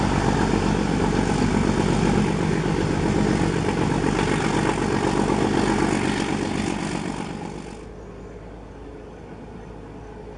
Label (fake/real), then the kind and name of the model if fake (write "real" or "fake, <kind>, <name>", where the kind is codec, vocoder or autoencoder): real